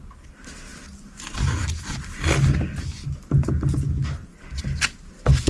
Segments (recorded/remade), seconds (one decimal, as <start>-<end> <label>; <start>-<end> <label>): 0.0-5.5 recorded